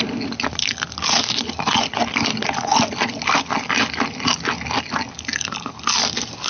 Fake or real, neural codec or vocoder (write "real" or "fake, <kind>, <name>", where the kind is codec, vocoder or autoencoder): real